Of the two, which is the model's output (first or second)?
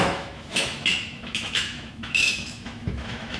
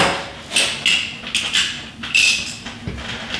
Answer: first